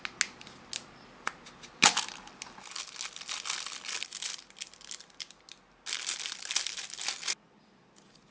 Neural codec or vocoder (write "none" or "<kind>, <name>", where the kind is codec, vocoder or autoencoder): none